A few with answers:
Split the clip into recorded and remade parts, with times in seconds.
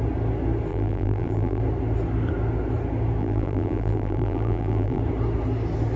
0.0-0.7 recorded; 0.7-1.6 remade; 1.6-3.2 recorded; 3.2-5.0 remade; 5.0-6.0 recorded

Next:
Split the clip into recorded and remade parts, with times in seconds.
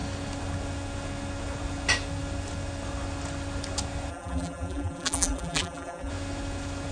0.0-4.1 recorded; 4.1-6.1 remade; 6.1-6.9 recorded